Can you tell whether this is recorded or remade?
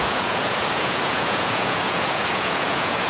remade